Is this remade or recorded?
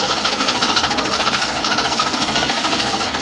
remade